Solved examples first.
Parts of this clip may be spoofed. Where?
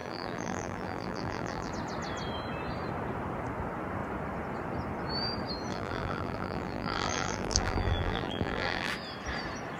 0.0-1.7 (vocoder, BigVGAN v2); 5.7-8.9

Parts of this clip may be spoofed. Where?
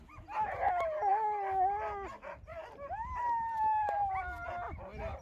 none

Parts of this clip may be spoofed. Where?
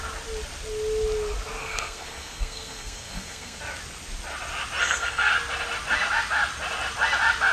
1.6-3.6 (codec, SNAC); 4.8-5.3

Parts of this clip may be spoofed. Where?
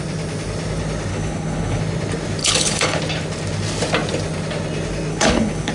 1.1-1.8 (codec, HILCodec); 2.4-3.0; 5.1-5.7